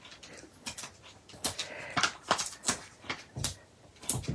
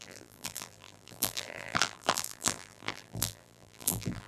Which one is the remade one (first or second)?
second